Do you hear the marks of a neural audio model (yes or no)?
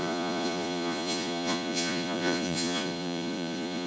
yes